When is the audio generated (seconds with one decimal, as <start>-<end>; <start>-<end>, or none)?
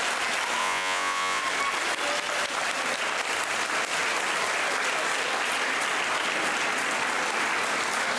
0.6-1.4